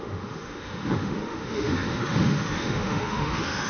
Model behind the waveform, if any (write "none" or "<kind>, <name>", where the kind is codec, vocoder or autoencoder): autoencoder, DAC-VAE